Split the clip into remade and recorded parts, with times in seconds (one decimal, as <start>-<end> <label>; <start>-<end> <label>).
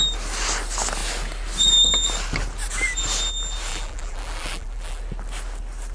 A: 0.0-3.7 recorded; 3.7-5.0 remade; 5.0-5.9 recorded